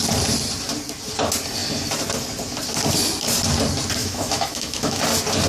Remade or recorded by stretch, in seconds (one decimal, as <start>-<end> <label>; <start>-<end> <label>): 0.0-4.0 recorded; 4.0-5.0 remade; 5.0-5.5 recorded

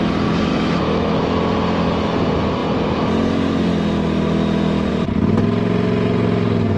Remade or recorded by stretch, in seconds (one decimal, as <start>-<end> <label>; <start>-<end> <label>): 0.0-0.5 recorded; 0.5-1.2 remade; 1.2-6.8 recorded

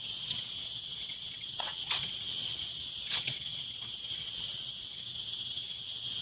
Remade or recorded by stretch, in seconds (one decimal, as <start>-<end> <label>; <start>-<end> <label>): 0.0-6.2 remade

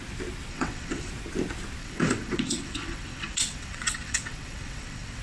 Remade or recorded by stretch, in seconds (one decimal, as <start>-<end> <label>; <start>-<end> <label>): 0.0-0.5 recorded; 0.5-1.1 remade; 1.1-1.8 recorded; 1.8-5.2 remade

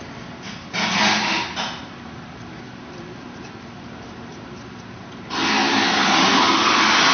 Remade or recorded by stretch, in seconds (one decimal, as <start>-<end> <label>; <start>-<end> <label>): 0.0-1.8 recorded; 1.8-4.9 remade; 4.9-7.1 recorded

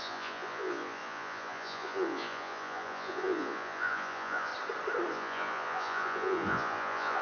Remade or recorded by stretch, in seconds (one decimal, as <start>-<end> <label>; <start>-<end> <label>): 0.0-4.5 remade; 4.5-5.1 recorded; 5.1-7.2 remade

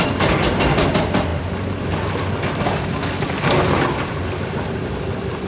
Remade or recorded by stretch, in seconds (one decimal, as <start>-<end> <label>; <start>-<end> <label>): 0.0-5.5 recorded

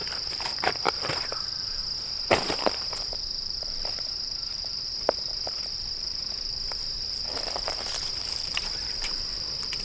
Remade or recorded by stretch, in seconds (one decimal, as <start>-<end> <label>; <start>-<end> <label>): 0.0-1.8 remade; 1.8-2.6 recorded; 2.6-9.8 remade